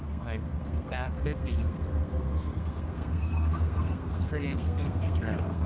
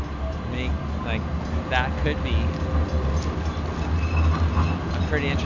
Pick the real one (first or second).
second